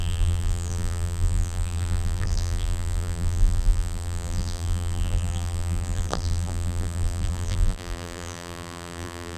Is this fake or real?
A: fake